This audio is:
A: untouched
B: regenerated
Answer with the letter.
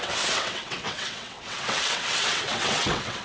B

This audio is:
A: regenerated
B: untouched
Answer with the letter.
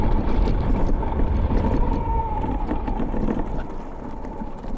B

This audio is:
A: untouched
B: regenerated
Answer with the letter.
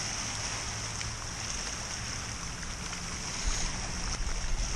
A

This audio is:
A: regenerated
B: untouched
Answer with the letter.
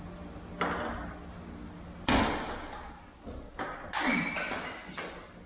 B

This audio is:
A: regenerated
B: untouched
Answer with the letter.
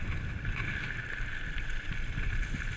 B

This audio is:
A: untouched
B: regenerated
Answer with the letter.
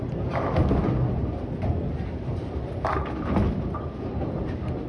A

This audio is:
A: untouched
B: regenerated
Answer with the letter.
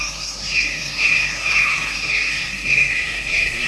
B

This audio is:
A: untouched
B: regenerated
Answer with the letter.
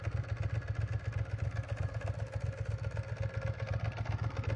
A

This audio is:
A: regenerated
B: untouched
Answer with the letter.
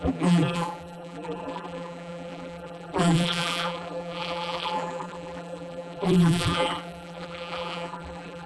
A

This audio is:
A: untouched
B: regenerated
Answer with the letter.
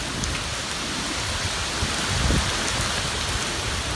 A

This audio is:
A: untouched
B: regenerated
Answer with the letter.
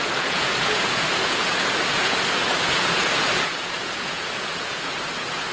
B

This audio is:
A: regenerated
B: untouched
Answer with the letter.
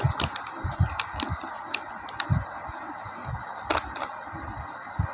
B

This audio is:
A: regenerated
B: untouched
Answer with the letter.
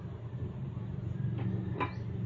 B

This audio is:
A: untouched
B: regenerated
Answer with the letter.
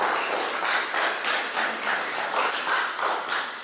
A